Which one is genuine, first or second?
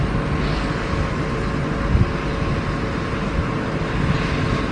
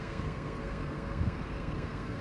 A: first